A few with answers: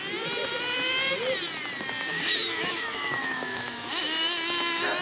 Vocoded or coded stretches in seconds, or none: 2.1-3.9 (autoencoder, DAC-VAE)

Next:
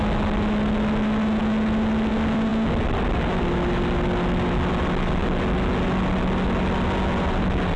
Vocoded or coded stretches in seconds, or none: none

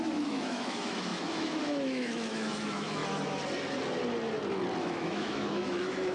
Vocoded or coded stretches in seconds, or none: 0.0-3.0 (autoencoder, DAC-VAE); 4.8-6.1

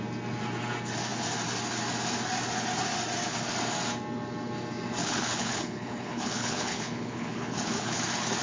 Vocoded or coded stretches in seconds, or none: 5.0-8.0 (codec, HILCodec)

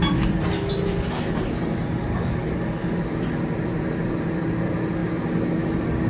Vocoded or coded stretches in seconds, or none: 2.0-3.0 (codec, DAC)

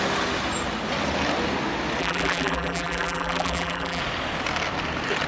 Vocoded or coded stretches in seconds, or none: 2.0-4.0 (vocoder, BigVGAN v2)

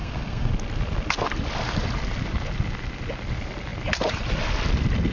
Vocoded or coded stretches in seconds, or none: 0.0-0.5 (codec, SNAC)

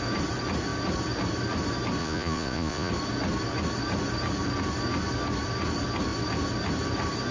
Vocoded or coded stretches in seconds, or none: 2.0-2.9 (vocoder, Vocos)